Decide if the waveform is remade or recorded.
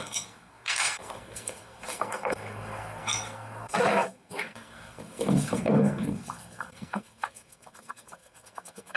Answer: remade